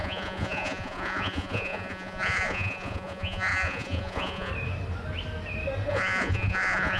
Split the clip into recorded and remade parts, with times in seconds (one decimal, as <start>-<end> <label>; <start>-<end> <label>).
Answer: 0.0-4.5 remade; 4.5-5.9 recorded; 5.9-7.0 remade